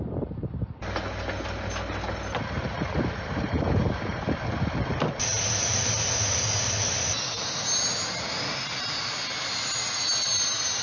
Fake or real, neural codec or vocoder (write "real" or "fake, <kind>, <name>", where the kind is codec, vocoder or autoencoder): real